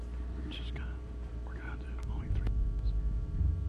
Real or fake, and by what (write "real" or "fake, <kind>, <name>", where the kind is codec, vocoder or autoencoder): fake, vocoder, BigVGAN v2